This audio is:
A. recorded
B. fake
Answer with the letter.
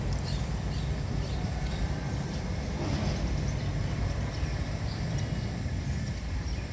B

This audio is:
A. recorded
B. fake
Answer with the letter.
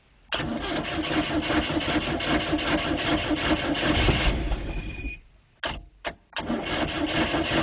A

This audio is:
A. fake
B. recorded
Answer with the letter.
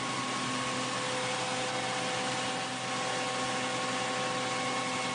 B